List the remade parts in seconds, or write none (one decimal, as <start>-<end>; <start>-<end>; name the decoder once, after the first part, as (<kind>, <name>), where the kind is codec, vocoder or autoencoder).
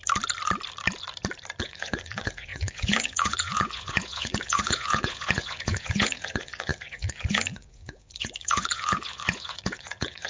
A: 1.6-10.3 (vocoder, Vocos)